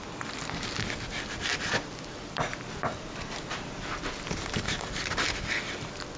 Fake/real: real